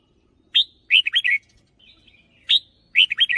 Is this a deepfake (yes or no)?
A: no